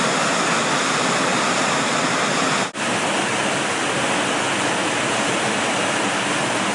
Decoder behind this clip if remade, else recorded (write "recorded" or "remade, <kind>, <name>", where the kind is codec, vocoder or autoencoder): recorded